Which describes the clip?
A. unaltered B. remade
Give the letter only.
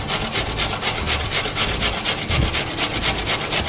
A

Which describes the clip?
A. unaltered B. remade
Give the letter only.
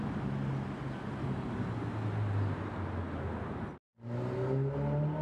A